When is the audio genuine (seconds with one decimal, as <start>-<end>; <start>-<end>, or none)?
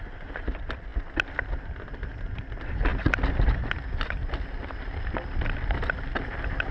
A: 0.0-6.7